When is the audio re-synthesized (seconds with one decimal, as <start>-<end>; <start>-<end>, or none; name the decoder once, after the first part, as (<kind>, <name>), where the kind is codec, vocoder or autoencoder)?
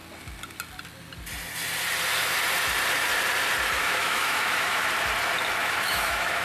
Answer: 3.8-4.8 (autoencoder, DAC-VAE); 5.6-6.4